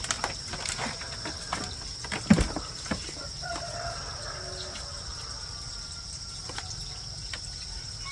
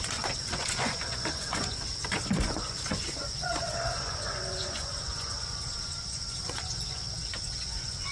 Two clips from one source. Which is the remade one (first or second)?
second